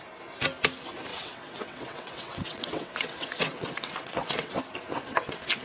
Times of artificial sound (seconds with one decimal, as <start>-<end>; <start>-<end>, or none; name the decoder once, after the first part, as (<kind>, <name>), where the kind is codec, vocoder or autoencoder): 1.1-4.5 (vocoder, WaveNeXt)